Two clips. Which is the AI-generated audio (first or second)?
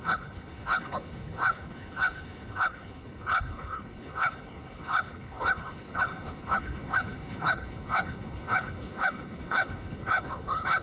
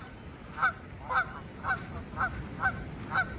first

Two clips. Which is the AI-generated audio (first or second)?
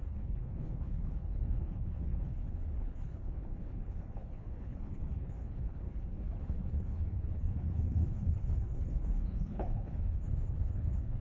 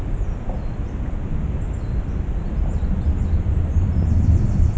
first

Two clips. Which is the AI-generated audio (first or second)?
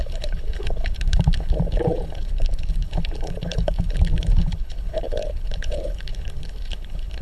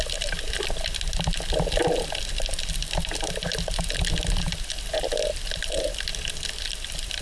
first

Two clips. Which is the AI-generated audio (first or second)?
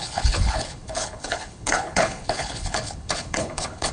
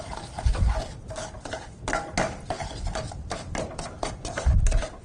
first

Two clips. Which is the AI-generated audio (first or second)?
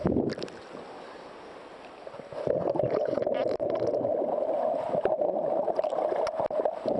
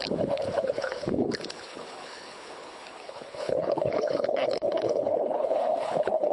second